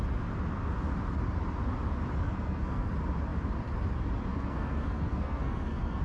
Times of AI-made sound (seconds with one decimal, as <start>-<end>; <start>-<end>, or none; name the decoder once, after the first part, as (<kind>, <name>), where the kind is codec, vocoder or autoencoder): 2.2-2.9 (codec, SNAC); 4.3-6.0